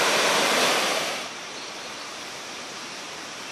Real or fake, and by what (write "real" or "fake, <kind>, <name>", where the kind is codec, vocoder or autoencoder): fake, vocoder, BigVGAN v2